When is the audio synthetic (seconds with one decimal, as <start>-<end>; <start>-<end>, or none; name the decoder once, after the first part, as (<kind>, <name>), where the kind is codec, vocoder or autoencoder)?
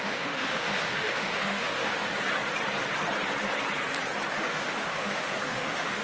0.0-2.1 (autoencoder, DAC-VAE); 4.3-6.0